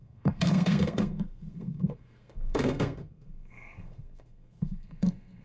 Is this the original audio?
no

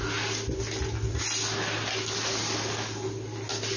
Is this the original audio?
yes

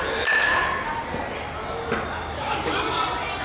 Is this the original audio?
yes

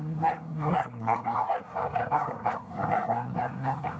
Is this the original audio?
no